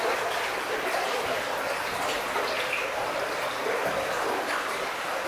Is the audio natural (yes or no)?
yes